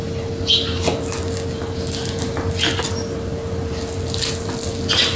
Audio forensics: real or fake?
real